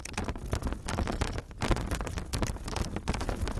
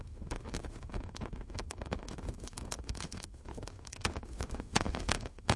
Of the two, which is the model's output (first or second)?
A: second